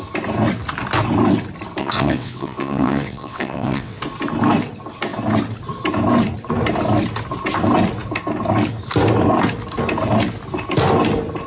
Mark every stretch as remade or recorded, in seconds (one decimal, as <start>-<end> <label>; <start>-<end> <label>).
0.0-1.8 recorded; 1.8-4.0 remade; 4.0-11.5 recorded